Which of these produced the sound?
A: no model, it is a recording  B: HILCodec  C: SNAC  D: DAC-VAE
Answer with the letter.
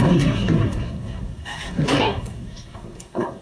C